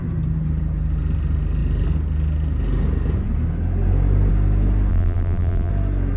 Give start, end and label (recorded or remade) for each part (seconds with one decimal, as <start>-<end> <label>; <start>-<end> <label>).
0.0-4.9 recorded; 4.9-5.7 remade; 5.7-6.2 recorded